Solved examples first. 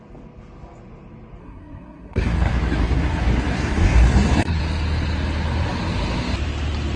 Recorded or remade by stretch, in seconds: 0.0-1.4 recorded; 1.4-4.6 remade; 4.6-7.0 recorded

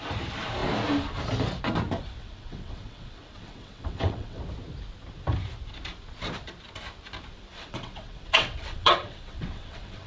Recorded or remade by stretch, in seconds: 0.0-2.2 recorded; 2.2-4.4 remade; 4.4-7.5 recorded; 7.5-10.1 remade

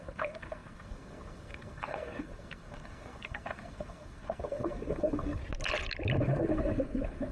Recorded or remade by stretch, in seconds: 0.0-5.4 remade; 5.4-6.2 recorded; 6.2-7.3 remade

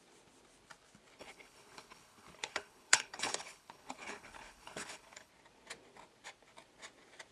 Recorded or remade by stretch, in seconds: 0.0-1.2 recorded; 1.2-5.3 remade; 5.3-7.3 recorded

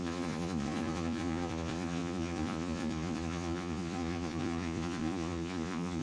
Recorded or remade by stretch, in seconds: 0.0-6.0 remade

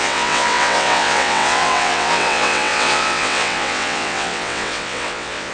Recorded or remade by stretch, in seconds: 0.0-5.5 remade

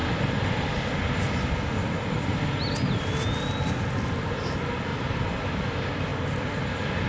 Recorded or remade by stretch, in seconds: 0.0-4.9 recorded; 4.9-5.6 remade; 5.6-7.1 recorded

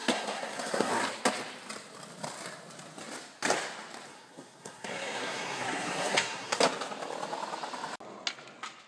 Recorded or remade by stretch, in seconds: 0.0-0.9 remade; 0.9-4.1 recorded; 4.1-6.6 remade; 6.6-8.9 recorded